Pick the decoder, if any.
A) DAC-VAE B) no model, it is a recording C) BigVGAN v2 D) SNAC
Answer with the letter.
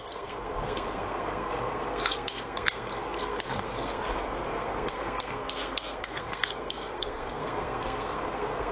D